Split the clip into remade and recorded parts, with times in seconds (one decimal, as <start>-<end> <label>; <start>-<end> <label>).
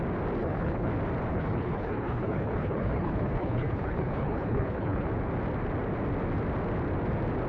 0.0-0.4 recorded; 0.4-0.9 remade; 0.9-1.3 recorded; 1.3-5.1 remade; 5.1-7.5 recorded